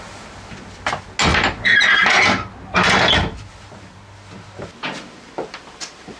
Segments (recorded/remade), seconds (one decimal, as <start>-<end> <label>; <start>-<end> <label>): 0.0-6.2 recorded